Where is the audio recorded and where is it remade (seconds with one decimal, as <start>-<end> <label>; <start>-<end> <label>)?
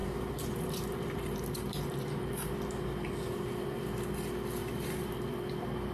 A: 0.0-3.5 remade; 3.5-4.6 recorded; 4.6-5.1 remade; 5.1-5.9 recorded